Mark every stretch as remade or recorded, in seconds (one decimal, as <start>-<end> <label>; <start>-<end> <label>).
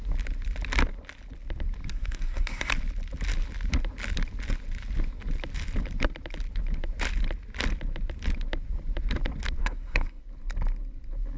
0.0-1.9 recorded; 1.9-2.7 remade; 2.7-9.6 recorded; 9.6-10.2 remade; 10.2-11.4 recorded